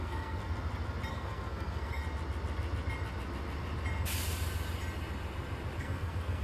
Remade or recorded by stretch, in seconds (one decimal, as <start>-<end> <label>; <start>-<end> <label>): 0.0-0.4 remade; 0.4-1.1 recorded; 1.1-2.0 remade; 2.0-5.8 recorded; 5.8-6.4 remade